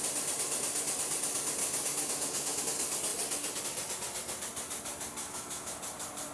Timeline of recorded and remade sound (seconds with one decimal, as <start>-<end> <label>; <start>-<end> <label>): 0.0-1.6 recorded; 1.6-2.6 remade; 2.6-5.2 recorded; 5.2-5.8 remade; 5.8-6.3 recorded